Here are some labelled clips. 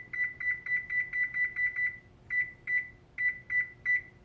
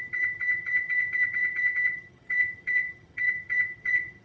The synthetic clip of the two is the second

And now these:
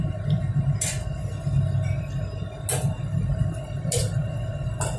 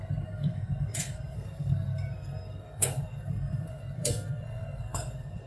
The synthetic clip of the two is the second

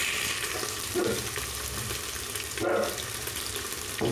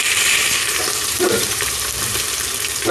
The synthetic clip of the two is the second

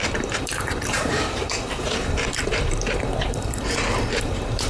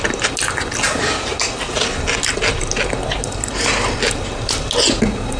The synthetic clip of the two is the first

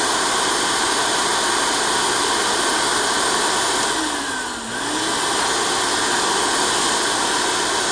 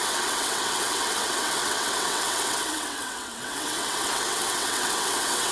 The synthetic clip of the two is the second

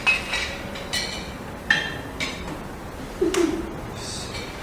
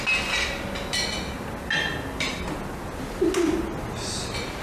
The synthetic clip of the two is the first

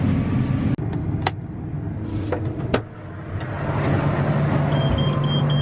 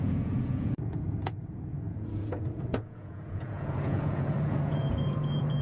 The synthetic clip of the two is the second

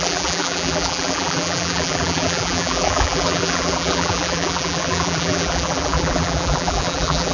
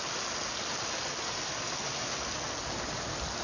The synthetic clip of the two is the first